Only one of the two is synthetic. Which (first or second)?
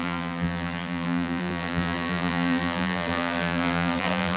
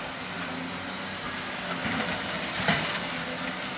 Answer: first